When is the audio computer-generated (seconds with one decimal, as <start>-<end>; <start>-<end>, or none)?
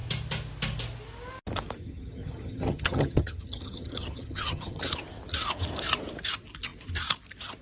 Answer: 1.8-4.8